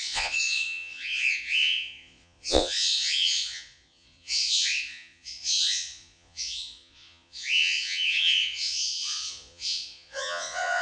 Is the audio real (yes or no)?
no